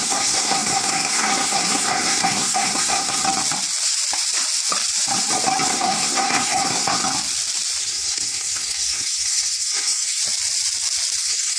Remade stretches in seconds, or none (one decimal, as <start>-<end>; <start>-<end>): 0.0-3.2; 5.7-7.0; 7.8-10.2; 11.2-11.6